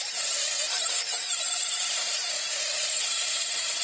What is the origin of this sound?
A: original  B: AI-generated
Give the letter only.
B